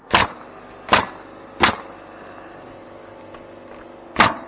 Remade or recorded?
recorded